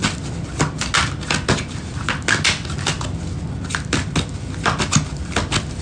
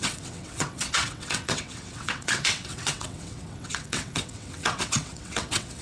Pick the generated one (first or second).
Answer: second